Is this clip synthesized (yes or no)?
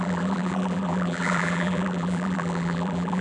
yes